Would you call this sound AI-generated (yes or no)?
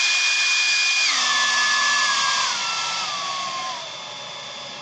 no